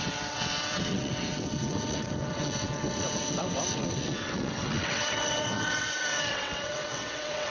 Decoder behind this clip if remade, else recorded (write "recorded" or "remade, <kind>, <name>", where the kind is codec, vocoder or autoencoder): remade, vocoder, WaveNeXt